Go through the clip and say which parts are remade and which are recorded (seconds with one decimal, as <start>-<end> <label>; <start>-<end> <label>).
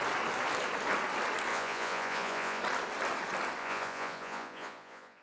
0.0-1.5 recorded; 1.5-2.6 remade; 2.6-3.6 recorded; 3.6-5.2 remade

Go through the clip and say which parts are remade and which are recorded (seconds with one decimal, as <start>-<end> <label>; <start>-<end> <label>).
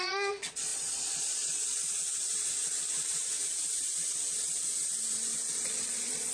0.0-1.8 remade; 1.8-5.6 recorded; 5.6-6.3 remade